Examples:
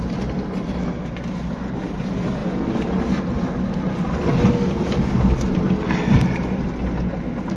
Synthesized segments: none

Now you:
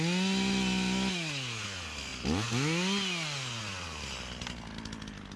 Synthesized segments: none

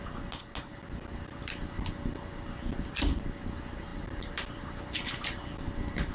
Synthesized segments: 3.9-6.1 (vocoder, BigVGAN v2)

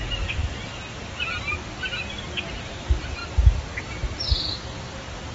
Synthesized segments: none

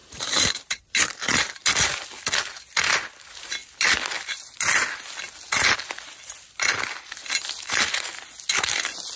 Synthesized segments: 0.0-0.8 (vocoder, BigVGAN v2)

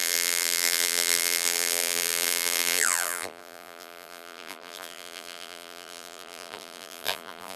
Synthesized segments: 0.0-7.6 (vocoder, BigVGAN v2)